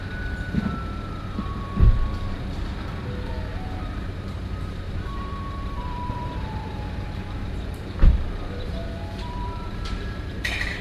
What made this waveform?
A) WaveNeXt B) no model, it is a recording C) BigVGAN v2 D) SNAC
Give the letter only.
C